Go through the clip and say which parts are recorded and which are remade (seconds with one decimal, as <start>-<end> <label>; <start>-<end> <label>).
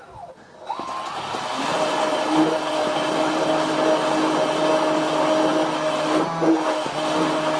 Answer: 0.0-1.7 recorded; 1.7-4.1 remade; 4.1-7.6 recorded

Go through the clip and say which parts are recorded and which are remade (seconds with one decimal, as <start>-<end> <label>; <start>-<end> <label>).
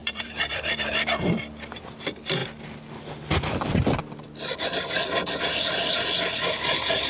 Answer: 0.0-1.4 remade; 1.4-7.1 recorded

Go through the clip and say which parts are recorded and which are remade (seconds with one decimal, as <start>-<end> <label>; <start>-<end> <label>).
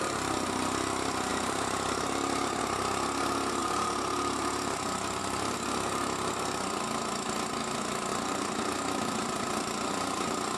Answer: 0.0-1.3 recorded; 1.3-2.6 remade; 2.6-3.6 recorded; 3.6-5.2 remade; 5.2-8.1 recorded; 8.1-10.6 remade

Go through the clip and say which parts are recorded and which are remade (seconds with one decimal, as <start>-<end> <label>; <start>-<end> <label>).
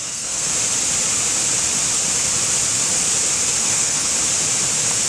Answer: 0.0-0.5 remade; 0.5-3.6 recorded; 3.6-4.1 remade; 4.1-5.1 recorded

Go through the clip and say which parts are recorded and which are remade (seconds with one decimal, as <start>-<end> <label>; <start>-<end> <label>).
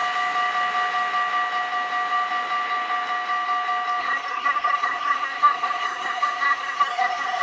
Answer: 0.0-4.0 recorded; 4.0-7.4 remade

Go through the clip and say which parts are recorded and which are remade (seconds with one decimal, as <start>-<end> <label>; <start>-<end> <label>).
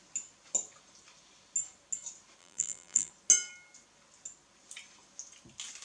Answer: 0.0-2.4 recorded; 2.4-3.1 remade; 3.1-5.8 recorded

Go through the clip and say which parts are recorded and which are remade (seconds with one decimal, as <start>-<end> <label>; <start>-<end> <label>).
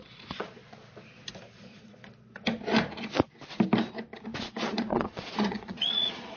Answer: 0.0-0.6 remade; 0.6-1.5 recorded; 1.5-2.5 remade; 2.5-4.4 recorded; 4.4-6.4 remade